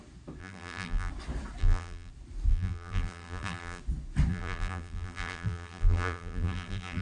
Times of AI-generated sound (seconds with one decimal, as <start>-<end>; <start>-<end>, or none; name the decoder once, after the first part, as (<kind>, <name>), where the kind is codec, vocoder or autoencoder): 0.4-1.1 (vocoder, BigVGAN v2); 1.6-2.1; 2.5-3.8; 4.3-7.0